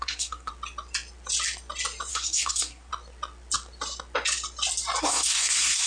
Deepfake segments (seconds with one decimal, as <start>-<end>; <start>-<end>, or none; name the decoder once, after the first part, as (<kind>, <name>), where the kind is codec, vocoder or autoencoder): 0.0-0.5 (codec, SNAC); 2.1-2.9; 5.0-5.9